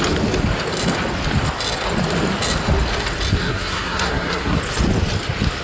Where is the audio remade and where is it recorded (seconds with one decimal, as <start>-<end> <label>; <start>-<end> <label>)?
0.0-3.4 recorded; 3.4-4.6 remade; 4.6-5.6 recorded